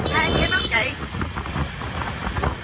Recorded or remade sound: remade